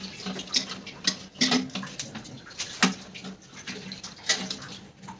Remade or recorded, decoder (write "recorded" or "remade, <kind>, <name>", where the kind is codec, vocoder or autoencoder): recorded